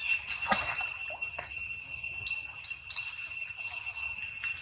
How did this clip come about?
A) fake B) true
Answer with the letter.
B